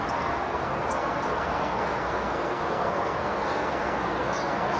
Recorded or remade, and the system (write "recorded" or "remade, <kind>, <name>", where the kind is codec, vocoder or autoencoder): remade, codec, SNAC